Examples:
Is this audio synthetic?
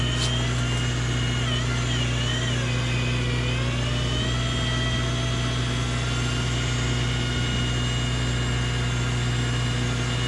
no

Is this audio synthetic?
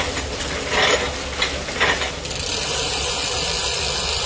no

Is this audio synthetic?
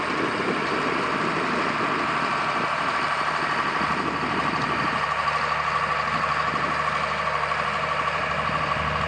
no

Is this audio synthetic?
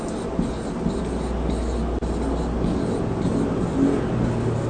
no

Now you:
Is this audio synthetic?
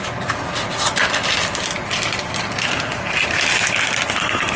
no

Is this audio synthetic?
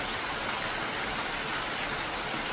no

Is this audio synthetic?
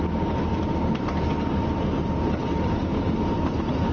no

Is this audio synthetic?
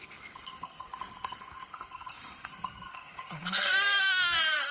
yes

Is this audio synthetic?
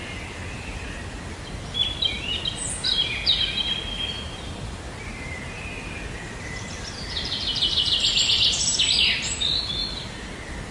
no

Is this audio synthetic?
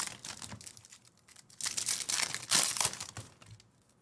no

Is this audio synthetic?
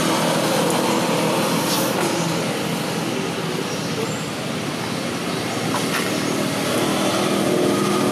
no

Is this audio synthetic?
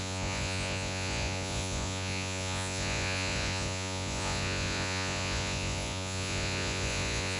yes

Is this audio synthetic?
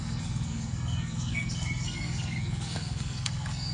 yes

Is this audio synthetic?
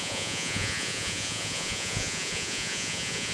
yes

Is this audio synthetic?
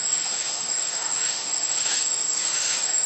yes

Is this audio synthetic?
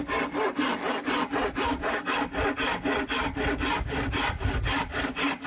no